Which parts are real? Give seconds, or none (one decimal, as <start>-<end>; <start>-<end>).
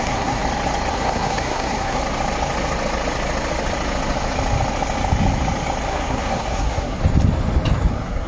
0.4-0.9; 2.0-5.9; 7.0-7.9